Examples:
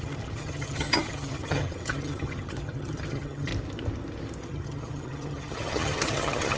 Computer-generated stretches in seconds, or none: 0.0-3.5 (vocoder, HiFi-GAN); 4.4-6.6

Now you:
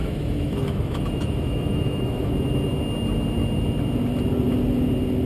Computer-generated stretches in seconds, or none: 0.0-2.3 (autoencoder, DAC-VAE)

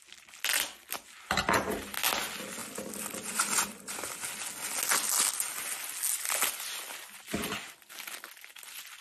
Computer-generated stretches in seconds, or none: none